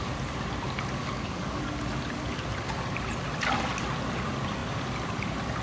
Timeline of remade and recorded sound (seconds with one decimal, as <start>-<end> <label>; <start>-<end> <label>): 0.0-1.0 recorded; 1.0-1.6 remade; 1.6-5.6 recorded